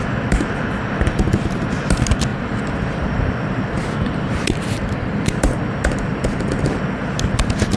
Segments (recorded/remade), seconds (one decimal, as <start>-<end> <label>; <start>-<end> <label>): 0.0-2.3 recorded; 2.3-6.5 remade; 6.5-7.8 recorded